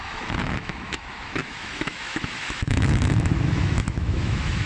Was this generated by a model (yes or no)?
yes